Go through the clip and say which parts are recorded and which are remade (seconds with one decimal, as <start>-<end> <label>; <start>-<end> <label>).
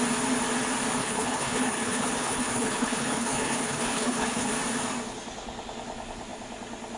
0.0-1.0 recorded; 1.0-4.5 remade; 4.5-7.0 recorded